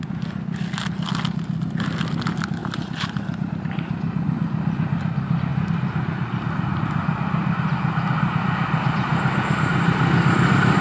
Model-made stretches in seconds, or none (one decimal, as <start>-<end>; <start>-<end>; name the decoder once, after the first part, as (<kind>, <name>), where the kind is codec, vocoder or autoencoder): 5.5-6.8 (vocoder, BigVGAN v2)